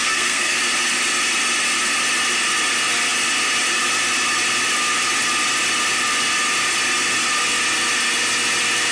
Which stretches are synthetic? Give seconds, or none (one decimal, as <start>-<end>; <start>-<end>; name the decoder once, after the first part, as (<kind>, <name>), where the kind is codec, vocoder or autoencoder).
0.0-0.6 (codec, SNAC)